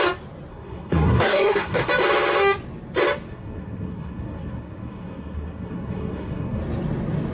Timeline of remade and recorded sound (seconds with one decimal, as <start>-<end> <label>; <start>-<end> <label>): 0.0-0.5 recorded; 0.5-1.9 remade; 1.9-3.3 recorded; 3.3-6.6 remade; 6.6-7.3 recorded